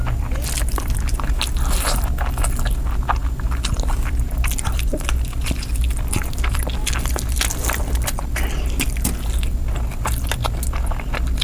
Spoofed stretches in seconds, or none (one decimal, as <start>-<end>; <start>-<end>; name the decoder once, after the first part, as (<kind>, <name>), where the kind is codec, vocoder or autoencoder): none